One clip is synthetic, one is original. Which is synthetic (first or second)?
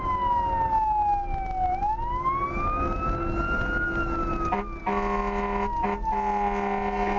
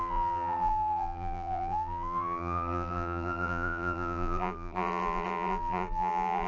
second